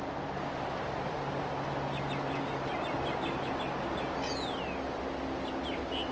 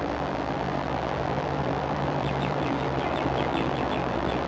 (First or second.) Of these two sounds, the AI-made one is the second